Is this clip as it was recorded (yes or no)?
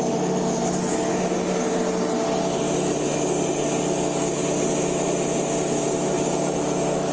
yes